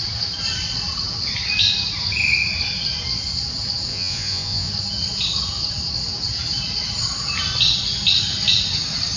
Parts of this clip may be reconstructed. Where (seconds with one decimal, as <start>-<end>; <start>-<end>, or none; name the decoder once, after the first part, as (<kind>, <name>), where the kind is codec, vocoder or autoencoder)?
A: 3.9-4.7 (vocoder, Vocos)